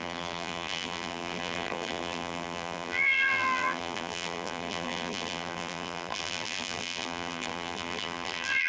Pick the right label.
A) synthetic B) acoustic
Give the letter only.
A